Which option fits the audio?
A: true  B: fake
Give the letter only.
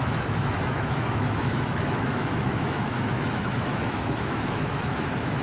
B